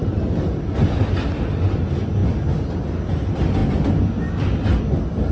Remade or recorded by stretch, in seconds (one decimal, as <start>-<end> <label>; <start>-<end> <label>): 0.0-5.3 recorded